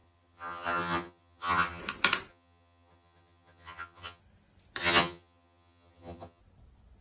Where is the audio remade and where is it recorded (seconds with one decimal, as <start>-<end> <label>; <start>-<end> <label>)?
0.0-1.8 remade; 1.8-2.3 recorded; 2.3-4.2 remade; 4.2-4.8 recorded; 4.8-6.4 remade; 6.4-7.0 recorded